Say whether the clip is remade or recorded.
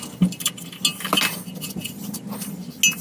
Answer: recorded